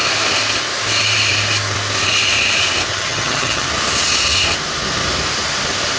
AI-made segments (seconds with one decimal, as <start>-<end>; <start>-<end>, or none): 2.9-3.7